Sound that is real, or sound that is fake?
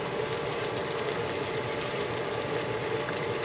real